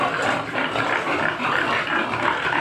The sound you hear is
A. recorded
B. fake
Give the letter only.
A